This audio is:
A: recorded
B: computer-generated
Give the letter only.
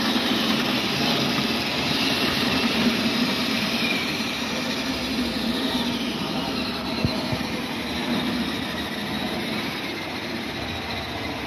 B